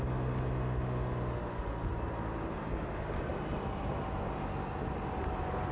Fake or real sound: real